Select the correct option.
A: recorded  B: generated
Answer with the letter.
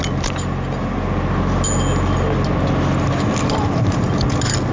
A